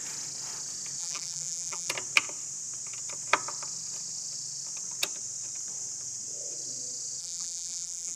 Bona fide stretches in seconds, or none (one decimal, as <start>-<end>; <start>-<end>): 0.0-1.0; 1.9-7.2